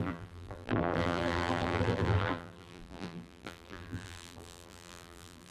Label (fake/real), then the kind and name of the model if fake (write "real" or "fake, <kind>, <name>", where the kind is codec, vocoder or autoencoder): fake, vocoder, BigVGAN v2